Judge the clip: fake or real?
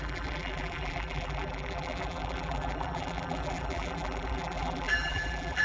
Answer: fake